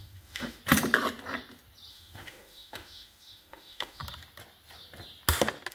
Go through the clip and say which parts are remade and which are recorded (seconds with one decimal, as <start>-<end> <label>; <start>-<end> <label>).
0.0-0.6 remade; 0.6-1.9 recorded; 1.9-4.0 remade; 4.0-5.7 recorded